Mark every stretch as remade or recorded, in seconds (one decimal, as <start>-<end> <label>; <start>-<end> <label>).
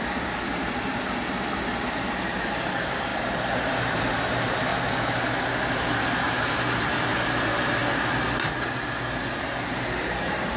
0.0-3.1 remade; 3.1-3.7 recorded; 3.7-4.7 remade; 4.7-5.7 recorded; 5.7-7.8 remade; 7.8-9.2 recorded; 9.2-10.6 remade